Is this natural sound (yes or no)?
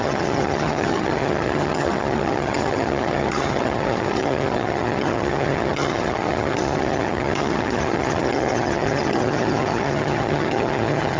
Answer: no